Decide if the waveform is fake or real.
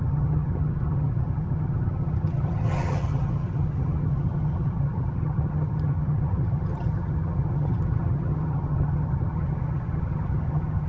fake